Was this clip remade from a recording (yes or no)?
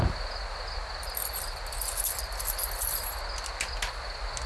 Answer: no